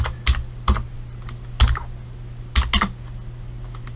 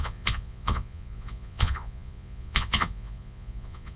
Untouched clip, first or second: first